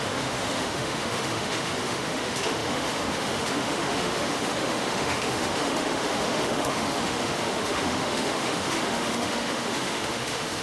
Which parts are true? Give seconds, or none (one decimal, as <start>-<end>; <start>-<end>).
none